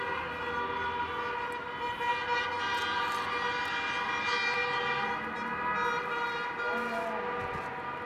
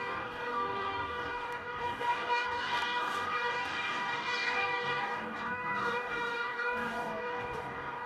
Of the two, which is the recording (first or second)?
first